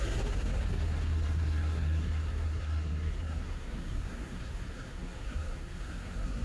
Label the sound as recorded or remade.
remade